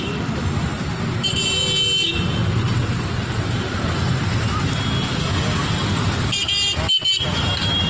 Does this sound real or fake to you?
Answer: real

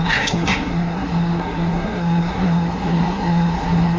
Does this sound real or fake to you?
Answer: fake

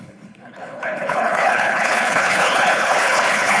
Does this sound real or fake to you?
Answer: fake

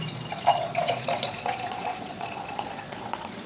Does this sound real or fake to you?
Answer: fake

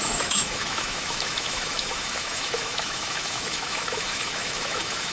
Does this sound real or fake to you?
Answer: fake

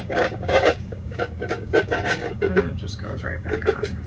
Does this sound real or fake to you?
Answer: fake